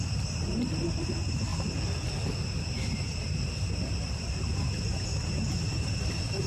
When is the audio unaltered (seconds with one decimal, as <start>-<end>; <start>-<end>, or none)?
1.5-2.7

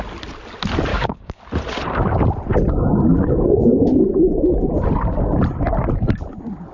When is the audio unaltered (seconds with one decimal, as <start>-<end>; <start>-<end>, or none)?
0.0-0.9; 1.4-6.7

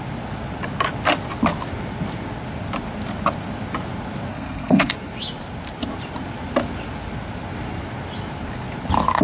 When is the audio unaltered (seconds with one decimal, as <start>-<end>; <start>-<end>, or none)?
0.0-4.3; 4.9-9.2

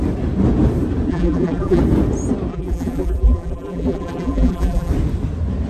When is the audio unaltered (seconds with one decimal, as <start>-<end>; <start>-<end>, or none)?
0.0-1.1; 1.8-2.5; 4.9-5.7

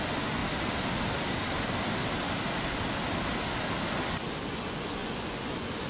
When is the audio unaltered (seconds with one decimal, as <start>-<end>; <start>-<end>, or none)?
0.4-3.9